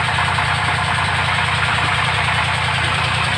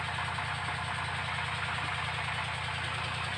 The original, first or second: second